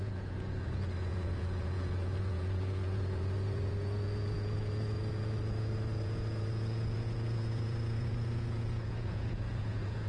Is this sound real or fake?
fake